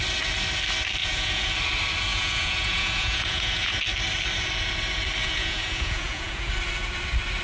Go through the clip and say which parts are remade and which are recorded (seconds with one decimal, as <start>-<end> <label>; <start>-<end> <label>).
0.0-1.0 recorded; 1.0-1.5 remade; 1.5-2.1 recorded; 2.1-3.8 remade; 3.8-5.2 recorded; 5.2-6.5 remade; 6.5-7.4 recorded